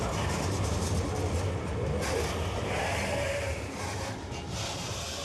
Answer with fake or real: real